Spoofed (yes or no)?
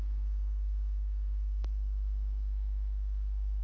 yes